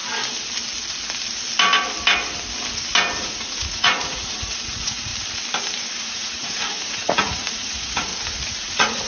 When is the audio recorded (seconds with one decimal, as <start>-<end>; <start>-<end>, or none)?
0.0-3.2; 5.1-6.0; 8.1-8.6